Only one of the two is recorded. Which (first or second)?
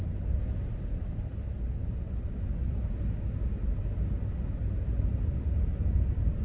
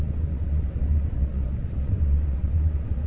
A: first